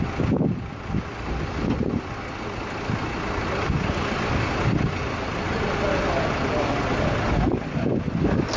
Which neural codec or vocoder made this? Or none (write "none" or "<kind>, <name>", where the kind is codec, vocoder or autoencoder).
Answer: none